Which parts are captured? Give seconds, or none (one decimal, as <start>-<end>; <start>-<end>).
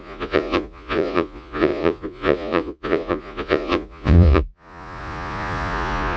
none